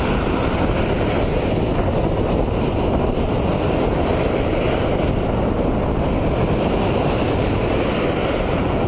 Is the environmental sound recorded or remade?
recorded